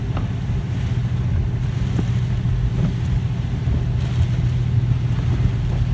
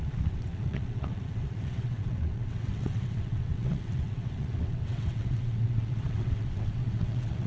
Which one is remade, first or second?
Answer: second